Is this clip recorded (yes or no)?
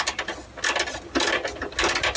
yes